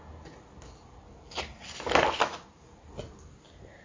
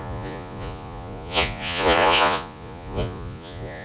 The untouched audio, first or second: first